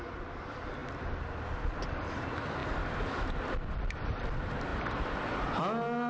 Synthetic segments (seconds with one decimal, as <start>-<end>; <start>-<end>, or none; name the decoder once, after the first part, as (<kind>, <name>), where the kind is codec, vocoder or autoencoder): none

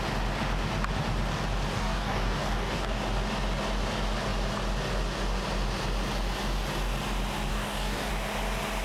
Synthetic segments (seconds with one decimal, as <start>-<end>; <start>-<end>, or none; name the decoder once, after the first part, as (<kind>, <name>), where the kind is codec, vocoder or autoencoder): 1.7-3.0 (codec, DAC); 7.5-8.1

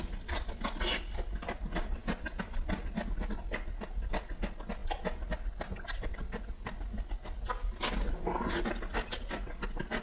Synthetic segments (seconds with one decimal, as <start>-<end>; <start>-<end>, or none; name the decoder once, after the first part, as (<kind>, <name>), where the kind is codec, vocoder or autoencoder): none

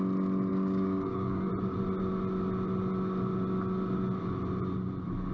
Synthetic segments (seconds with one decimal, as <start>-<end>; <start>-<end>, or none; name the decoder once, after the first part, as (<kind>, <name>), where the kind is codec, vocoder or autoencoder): 0.5-1.5 (codec, DAC)